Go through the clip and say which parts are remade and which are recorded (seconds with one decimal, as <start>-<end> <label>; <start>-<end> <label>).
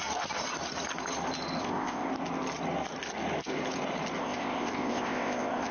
0.0-1.6 recorded; 1.6-2.1 remade; 2.1-4.2 recorded; 4.2-5.7 remade